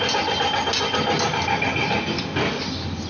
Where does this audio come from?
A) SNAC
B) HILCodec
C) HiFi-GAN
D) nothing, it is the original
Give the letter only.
D